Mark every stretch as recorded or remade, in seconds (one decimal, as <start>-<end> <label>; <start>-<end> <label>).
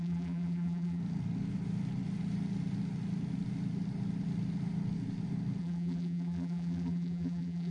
0.0-1.0 remade; 1.0-5.6 recorded; 5.6-7.7 remade